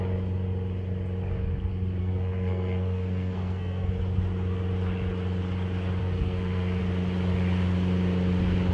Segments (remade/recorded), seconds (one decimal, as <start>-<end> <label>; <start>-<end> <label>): 0.0-2.0 recorded; 2.0-3.9 remade; 3.9-6.0 recorded; 6.0-6.8 remade; 6.8-8.7 recorded